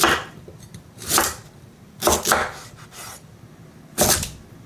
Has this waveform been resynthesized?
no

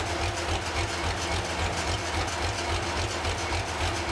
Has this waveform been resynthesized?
no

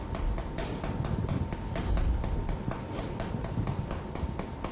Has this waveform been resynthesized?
no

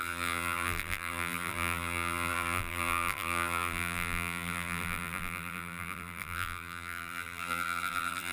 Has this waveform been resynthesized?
yes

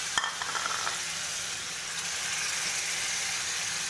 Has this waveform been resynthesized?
no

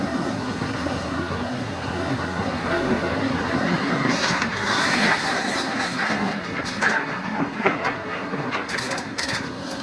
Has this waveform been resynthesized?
yes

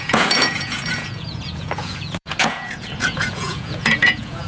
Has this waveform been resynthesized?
yes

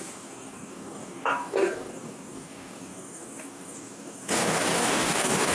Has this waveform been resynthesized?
yes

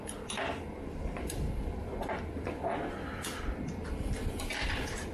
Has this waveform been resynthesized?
yes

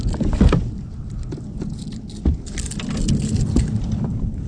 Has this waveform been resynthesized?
no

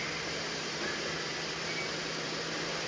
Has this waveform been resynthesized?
no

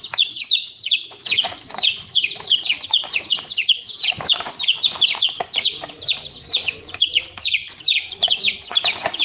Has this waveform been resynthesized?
yes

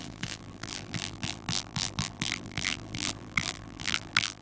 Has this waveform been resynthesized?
yes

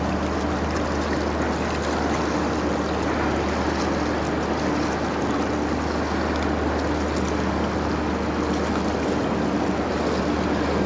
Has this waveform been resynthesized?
no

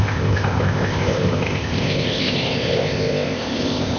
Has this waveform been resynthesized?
yes